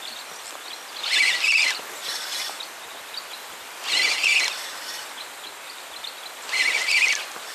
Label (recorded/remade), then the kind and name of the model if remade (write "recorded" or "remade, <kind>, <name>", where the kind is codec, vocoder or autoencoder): recorded